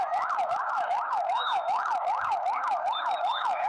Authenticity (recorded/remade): remade